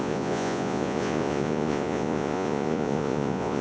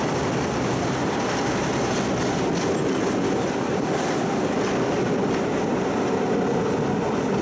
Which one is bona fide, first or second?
second